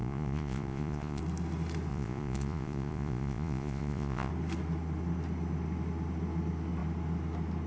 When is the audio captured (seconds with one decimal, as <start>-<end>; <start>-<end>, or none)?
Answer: 1.2-1.9; 4.3-7.7